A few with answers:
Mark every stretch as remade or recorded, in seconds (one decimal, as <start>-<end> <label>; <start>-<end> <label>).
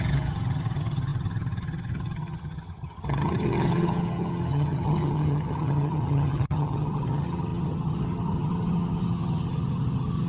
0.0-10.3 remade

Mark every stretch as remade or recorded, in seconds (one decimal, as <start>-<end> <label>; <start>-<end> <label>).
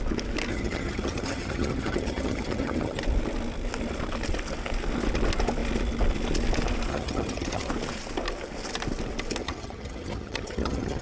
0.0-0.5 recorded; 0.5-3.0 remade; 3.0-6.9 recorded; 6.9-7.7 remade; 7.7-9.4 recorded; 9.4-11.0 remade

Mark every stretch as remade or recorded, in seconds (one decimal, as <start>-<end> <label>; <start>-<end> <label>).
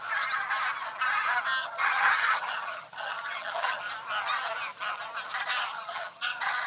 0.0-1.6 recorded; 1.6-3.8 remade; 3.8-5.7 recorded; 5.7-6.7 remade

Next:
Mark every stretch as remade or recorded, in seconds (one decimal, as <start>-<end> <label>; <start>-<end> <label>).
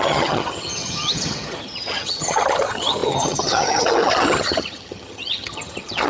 0.0-6.1 remade